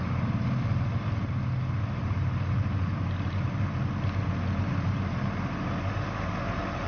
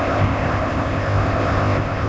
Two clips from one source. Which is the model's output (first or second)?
second